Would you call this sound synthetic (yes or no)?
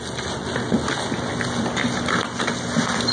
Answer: no